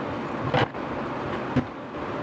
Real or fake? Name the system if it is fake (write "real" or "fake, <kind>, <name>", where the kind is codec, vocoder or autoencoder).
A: real